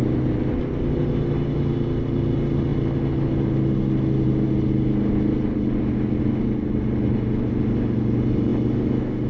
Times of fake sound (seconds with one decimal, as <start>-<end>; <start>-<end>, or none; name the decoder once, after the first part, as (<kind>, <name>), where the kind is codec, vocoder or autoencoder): none